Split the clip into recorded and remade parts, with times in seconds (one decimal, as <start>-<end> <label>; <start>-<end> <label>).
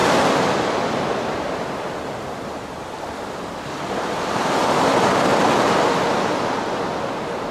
0.0-7.5 recorded